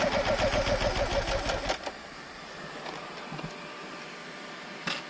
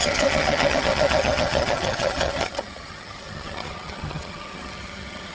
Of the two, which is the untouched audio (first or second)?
first